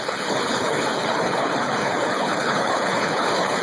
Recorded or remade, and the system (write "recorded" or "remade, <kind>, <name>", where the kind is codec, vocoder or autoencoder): remade, codec, HILCodec